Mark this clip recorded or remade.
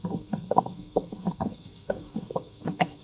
remade